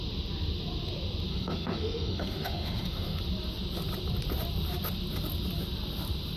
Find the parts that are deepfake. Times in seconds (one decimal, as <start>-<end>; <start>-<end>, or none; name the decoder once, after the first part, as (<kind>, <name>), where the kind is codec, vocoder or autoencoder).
1.3-3.2 (autoencoder, DAC-VAE)